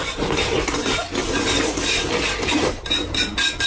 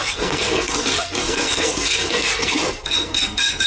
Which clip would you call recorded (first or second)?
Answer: first